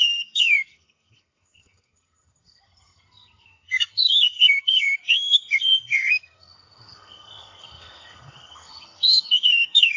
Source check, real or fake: fake